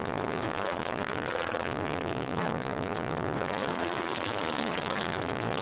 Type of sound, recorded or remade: remade